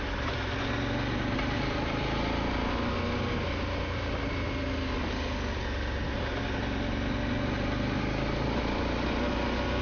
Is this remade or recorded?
recorded